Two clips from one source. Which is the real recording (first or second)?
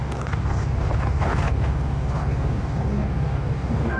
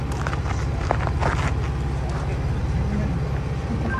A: second